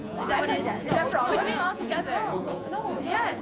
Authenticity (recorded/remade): remade